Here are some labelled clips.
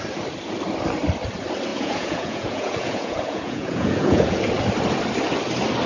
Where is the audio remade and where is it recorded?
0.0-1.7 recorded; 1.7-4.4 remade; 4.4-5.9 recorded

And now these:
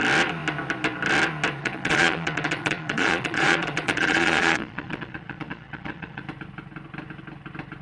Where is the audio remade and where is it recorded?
0.0-1.6 recorded; 1.6-6.2 remade; 6.2-7.8 recorded

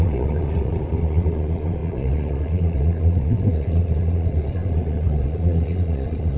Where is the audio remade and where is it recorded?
0.0-6.4 remade

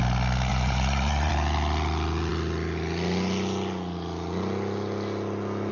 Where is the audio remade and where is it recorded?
0.0-0.5 recorded; 0.5-1.3 remade; 1.3-5.7 recorded

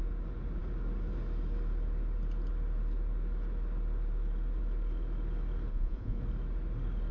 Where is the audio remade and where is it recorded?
0.0-5.7 recorded; 5.7-6.2 remade; 6.2-7.1 recorded